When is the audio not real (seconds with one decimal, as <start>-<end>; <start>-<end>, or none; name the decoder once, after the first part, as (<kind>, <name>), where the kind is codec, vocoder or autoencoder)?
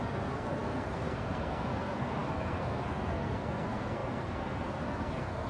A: 0.0-5.5 (codec, SNAC)